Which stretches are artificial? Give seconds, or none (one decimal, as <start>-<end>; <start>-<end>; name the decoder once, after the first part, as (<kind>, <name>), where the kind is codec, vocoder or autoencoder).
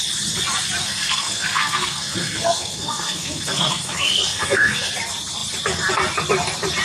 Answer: 0.8-4.9 (codec, SNAC)